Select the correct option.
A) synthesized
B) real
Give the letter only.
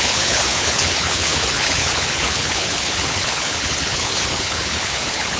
A